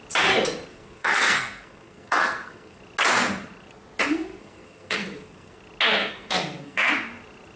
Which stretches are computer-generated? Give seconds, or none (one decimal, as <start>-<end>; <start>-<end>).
0.7-2.8; 4.1-5.6; 6.0-6.9